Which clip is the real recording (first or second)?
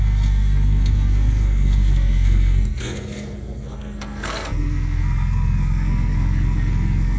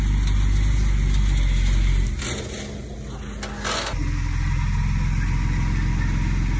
second